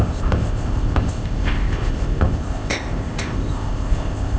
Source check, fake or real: fake